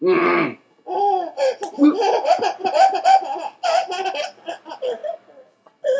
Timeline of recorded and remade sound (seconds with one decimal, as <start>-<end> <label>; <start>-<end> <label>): 0.0-6.0 recorded